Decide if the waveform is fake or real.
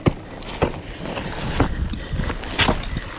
real